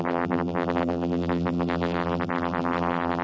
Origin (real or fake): fake